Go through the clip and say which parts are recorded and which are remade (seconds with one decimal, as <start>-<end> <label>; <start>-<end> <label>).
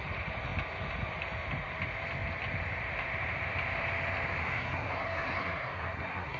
0.0-4.4 recorded; 4.4-6.4 remade